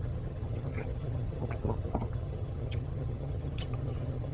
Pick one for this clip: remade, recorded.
remade